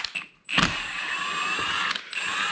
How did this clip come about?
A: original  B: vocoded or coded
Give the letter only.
A